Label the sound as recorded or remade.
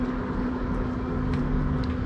remade